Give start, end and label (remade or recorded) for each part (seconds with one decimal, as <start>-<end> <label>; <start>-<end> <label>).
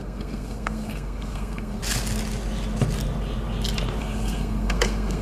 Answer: 0.0-1.8 remade; 1.8-4.0 recorded; 4.0-5.2 remade